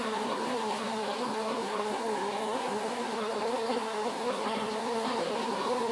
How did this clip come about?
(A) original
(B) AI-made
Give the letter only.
B